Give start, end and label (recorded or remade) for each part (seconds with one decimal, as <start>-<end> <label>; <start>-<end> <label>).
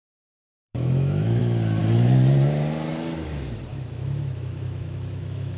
0.0-1.4 remade; 1.4-3.7 recorded; 3.7-5.6 remade